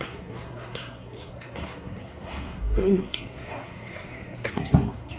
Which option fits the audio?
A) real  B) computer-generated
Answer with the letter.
B